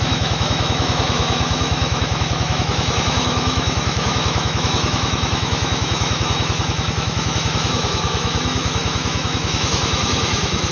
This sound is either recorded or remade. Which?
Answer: remade